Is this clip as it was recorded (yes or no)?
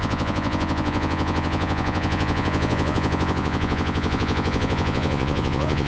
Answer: no